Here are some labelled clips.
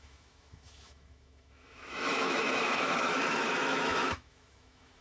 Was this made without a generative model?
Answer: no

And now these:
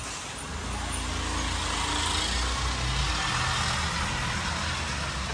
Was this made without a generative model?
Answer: yes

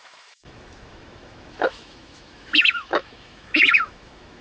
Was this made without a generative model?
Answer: no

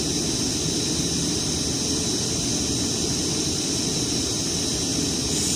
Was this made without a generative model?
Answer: yes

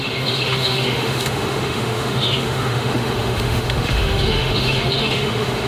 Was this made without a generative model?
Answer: no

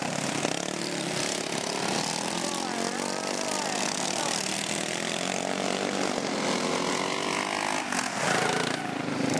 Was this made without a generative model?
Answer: yes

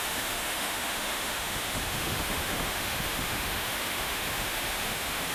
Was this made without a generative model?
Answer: no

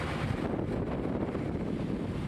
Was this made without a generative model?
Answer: yes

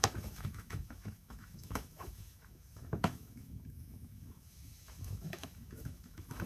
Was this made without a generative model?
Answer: no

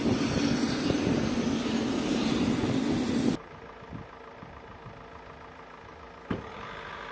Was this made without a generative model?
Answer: yes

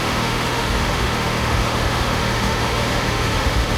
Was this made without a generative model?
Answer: no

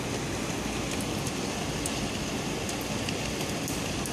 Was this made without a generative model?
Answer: yes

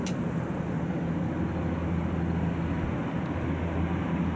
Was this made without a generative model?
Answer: yes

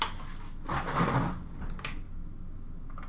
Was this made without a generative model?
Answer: yes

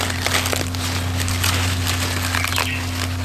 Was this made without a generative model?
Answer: yes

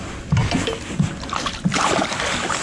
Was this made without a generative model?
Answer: yes